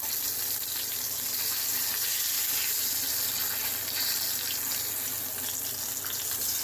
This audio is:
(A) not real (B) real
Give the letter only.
B